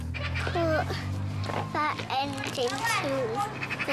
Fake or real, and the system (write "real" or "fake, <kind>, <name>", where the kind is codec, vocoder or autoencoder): real